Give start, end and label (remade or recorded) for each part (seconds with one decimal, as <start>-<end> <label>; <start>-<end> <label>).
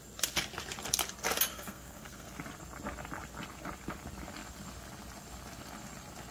0.0-1.5 recorded; 1.5-2.3 remade; 2.3-6.3 recorded